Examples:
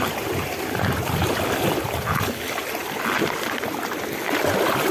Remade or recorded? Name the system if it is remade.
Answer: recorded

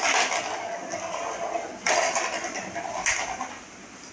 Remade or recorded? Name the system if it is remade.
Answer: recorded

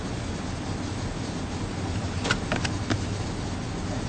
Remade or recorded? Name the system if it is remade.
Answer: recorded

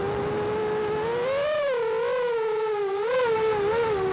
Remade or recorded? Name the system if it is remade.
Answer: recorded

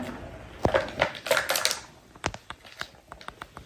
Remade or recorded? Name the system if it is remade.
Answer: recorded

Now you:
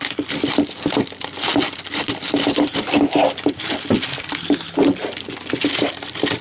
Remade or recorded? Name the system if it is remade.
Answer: recorded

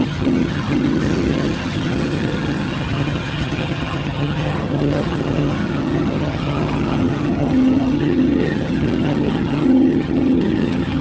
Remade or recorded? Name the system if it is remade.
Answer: remade, vocoder, HiFi-GAN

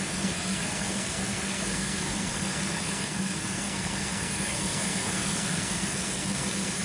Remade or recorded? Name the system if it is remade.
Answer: remade, codec, SNAC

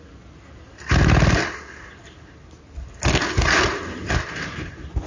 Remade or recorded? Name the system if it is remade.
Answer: recorded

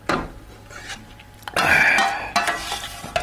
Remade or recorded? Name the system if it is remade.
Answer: recorded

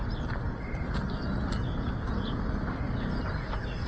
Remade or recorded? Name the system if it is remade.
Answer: recorded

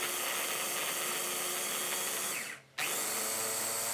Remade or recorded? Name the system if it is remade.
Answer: recorded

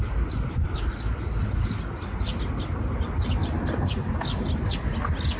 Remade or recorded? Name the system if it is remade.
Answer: recorded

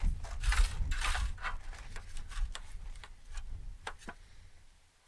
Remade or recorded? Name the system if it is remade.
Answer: recorded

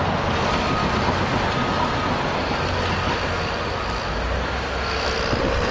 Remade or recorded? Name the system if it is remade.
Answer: recorded